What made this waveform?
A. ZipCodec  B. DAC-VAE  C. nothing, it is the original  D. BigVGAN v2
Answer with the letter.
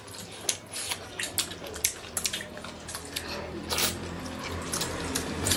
C